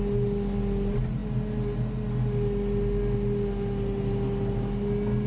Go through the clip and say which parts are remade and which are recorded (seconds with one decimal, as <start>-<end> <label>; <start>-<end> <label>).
0.0-5.3 recorded